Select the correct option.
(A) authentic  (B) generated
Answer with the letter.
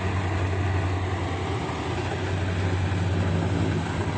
A